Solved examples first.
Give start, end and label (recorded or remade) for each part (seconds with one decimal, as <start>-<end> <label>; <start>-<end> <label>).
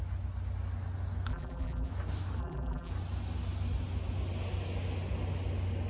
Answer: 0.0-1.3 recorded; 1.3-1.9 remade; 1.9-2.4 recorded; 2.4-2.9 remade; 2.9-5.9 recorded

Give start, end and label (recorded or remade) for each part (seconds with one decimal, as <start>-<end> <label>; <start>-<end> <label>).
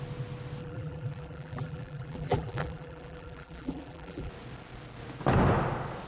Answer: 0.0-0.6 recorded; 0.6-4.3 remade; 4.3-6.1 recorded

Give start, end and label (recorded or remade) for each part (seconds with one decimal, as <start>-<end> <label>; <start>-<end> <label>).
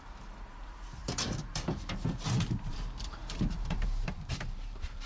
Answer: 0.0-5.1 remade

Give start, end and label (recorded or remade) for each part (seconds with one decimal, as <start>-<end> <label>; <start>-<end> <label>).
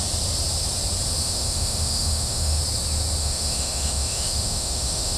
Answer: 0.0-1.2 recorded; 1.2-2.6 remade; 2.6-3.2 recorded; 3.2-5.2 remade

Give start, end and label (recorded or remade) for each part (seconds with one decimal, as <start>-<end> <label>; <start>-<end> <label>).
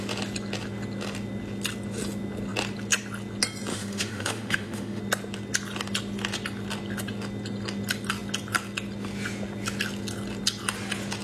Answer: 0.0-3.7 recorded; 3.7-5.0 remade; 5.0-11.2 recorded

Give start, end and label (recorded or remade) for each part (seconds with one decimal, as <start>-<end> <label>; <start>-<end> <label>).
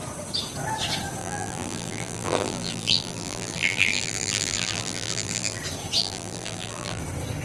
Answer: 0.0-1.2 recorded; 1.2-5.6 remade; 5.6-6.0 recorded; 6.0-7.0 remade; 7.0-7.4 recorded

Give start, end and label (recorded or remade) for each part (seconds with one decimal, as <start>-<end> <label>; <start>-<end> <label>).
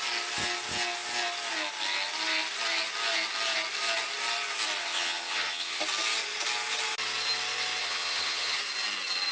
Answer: 0.0-4.8 recorded; 4.8-5.8 remade; 5.8-7.8 recorded; 7.8-8.6 remade; 8.6-9.3 recorded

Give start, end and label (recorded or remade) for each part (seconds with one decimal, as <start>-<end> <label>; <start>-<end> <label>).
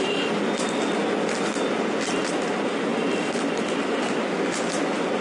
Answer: 0.0-5.2 recorded